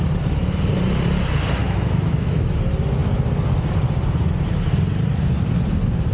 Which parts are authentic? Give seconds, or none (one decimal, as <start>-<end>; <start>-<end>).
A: 0.0-1.6; 2.5-6.1